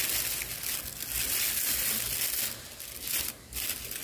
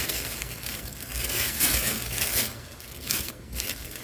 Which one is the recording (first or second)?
first